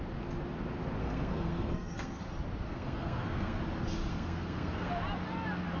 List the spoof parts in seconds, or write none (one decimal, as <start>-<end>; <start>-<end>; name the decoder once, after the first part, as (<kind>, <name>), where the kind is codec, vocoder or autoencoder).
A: 1.0-2.2 (codec, SNAC); 2.7-3.6; 4.1-4.9